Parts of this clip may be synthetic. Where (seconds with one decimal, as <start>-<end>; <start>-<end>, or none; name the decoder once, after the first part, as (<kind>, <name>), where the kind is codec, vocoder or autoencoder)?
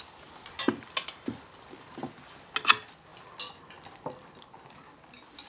none